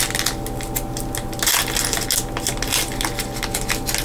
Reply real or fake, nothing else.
real